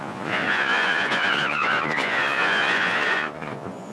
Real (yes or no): no